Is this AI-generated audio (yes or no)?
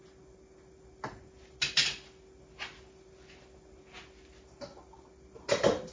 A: no